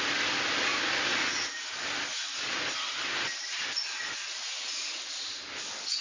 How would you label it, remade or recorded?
recorded